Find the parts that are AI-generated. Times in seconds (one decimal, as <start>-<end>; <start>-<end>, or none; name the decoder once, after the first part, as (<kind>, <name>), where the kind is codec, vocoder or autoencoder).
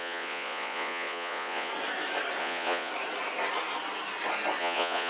0.0-1.7 (vocoder, Vocos); 2.4-2.9; 4.6-5.1